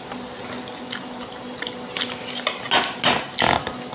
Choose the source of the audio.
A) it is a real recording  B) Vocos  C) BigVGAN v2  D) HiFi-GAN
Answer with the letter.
A